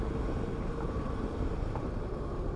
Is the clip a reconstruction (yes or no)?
yes